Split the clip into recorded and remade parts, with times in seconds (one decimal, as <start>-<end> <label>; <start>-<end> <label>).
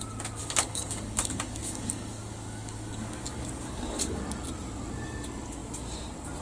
0.0-0.4 recorded; 0.4-4.2 remade; 4.2-6.4 recorded